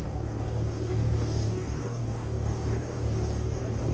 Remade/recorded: remade